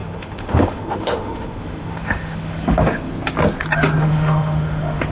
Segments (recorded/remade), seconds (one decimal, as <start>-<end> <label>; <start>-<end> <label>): 0.0-3.1 remade; 3.1-4.0 recorded; 4.0-5.1 remade

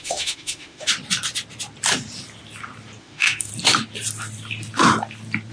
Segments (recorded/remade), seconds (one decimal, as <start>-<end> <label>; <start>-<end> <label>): 0.0-0.9 remade; 0.9-3.0 recorded; 3.0-3.5 remade; 3.5-5.5 recorded

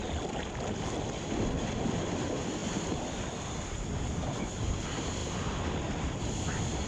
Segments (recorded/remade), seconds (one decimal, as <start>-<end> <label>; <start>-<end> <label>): 0.0-6.9 recorded

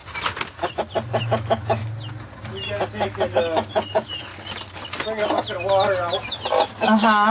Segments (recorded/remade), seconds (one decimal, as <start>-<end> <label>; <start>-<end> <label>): 0.0-1.2 recorded; 1.2-1.8 remade; 1.8-3.3 recorded; 3.3-4.3 remade; 4.3-6.7 recorded; 6.7-7.3 remade

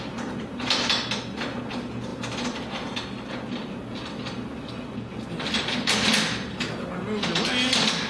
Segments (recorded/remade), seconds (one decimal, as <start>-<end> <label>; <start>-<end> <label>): 0.0-8.1 recorded